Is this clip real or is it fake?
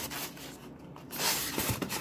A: real